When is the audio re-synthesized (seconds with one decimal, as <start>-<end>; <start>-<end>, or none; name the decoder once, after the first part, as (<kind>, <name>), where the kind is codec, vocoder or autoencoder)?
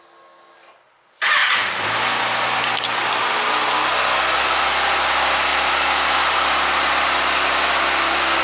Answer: 5.5-6.2 (vocoder, BigVGAN v2)